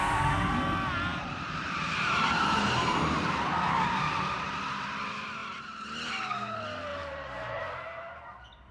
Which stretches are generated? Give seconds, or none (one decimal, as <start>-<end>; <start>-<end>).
1.1-4.4; 6.9-7.6